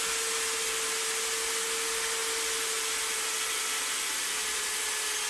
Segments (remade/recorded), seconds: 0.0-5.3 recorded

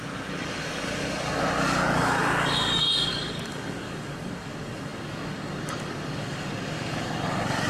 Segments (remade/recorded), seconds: 0.0-7.7 remade